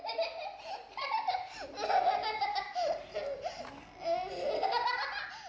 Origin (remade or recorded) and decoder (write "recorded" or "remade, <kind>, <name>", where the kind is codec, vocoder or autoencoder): recorded